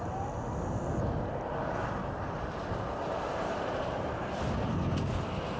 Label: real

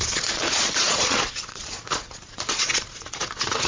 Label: fake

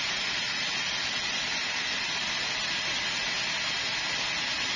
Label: real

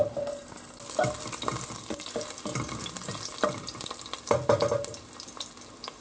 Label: real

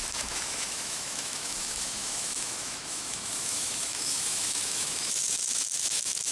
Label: fake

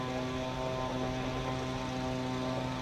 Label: real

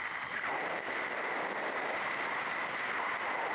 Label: real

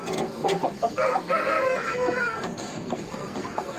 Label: fake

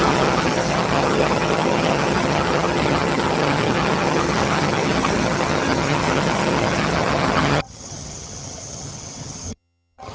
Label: fake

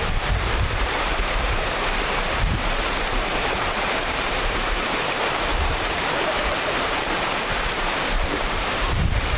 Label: fake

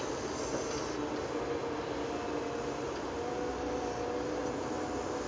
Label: real